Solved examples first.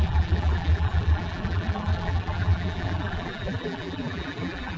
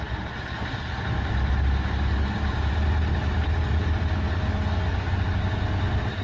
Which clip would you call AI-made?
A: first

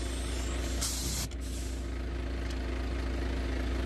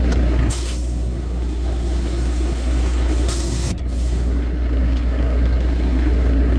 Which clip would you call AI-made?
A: second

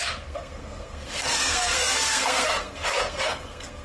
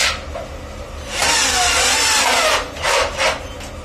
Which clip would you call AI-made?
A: first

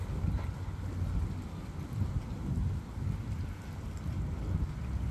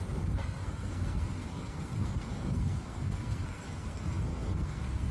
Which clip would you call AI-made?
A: second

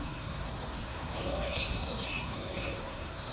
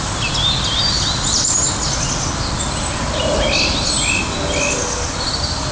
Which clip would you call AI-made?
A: first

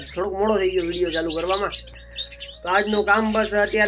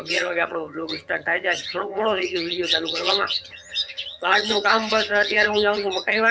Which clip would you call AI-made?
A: second